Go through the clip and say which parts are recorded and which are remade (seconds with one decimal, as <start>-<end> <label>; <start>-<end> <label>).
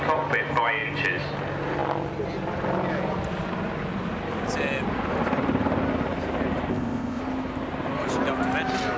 0.0-6.7 recorded; 6.7-7.2 remade; 7.2-9.0 recorded